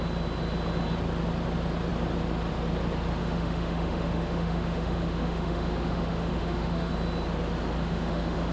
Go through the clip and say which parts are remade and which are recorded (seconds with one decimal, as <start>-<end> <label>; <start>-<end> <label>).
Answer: 0.0-3.2 recorded; 3.2-6.9 remade; 6.9-7.8 recorded; 7.8-8.5 remade